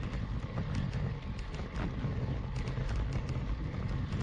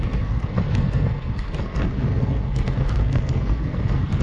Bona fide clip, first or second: first